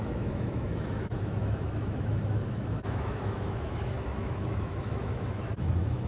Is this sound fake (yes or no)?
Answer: yes